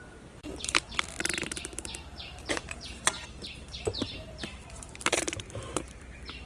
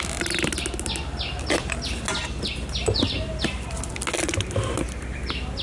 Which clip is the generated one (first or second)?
first